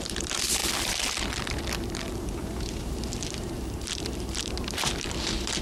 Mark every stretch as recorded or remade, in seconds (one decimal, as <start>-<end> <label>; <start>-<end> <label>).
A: 0.0-5.6 remade